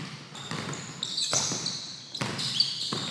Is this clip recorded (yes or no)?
yes